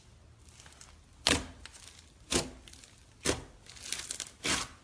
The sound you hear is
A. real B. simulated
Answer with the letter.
A